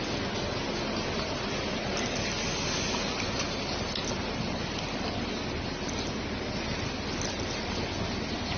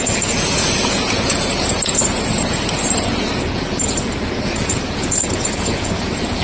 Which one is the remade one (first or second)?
second